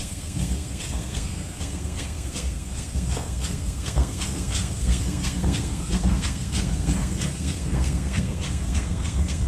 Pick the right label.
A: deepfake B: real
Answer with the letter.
A